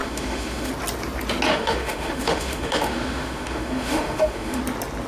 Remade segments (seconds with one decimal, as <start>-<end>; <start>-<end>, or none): 0.0-0.7; 1.5-4.6

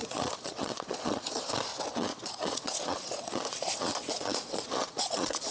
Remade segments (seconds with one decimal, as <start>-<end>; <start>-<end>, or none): 0.0-1.4; 1.9-5.5

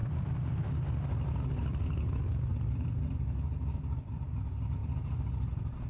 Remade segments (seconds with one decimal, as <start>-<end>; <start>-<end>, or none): 0.0-5.9

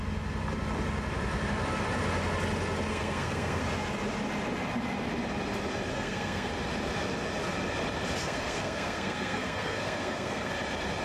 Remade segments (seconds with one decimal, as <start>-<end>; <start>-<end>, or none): 2.9-3.6; 5.9-6.5; 8.2-10.5